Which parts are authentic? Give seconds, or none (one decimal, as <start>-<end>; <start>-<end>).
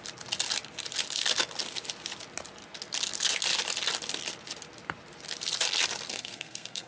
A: 0.0-6.1